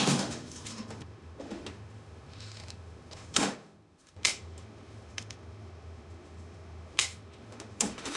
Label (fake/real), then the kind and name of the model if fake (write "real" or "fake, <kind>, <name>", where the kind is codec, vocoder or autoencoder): fake, autoencoder, DAC-VAE